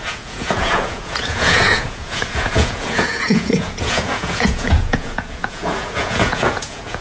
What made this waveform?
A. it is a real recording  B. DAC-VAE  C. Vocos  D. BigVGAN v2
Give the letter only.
C